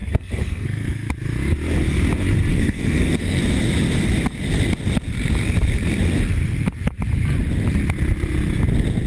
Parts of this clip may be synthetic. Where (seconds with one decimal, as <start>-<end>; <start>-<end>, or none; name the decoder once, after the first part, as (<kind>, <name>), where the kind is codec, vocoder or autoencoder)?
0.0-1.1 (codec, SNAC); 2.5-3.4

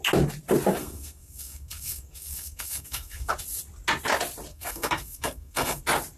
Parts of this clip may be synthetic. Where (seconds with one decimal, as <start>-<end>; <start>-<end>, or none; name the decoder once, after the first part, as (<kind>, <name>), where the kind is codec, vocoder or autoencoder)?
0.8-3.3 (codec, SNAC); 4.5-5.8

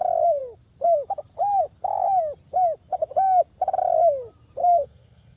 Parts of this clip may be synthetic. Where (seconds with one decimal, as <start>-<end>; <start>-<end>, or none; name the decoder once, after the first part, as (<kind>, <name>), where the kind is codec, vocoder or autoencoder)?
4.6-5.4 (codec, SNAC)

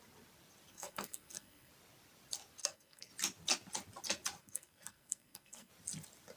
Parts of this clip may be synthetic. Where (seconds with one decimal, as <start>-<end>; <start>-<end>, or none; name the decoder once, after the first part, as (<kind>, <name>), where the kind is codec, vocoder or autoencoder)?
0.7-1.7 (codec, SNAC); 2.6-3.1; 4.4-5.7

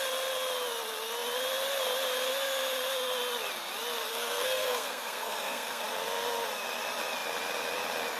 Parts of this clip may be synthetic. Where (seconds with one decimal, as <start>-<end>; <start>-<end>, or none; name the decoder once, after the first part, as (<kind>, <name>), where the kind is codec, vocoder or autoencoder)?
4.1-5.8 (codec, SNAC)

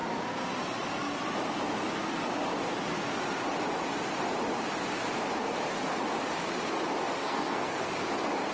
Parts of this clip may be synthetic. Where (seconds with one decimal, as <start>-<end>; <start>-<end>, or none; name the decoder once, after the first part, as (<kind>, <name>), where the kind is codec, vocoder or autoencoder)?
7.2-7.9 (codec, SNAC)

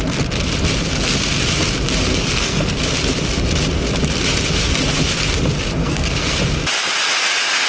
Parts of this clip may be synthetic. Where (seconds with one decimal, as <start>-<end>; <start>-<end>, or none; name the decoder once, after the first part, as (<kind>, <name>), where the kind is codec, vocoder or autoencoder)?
2.1-2.8 (codec, SNAC); 5.8-6.4